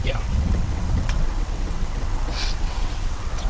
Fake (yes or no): yes